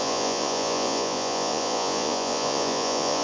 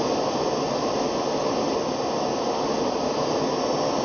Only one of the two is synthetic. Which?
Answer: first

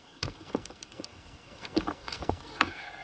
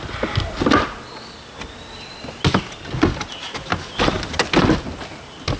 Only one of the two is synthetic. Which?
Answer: first